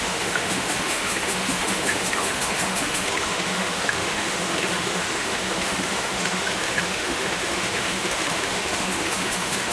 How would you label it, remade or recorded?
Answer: remade